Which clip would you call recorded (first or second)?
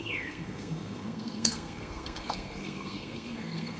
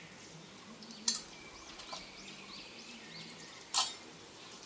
second